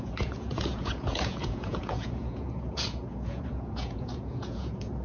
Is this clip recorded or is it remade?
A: remade